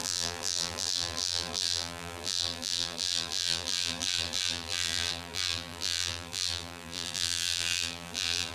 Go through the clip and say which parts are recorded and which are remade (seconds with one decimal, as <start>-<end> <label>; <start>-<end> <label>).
0.0-8.5 remade